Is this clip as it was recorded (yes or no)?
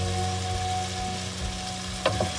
yes